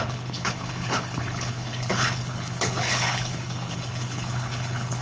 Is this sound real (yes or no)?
no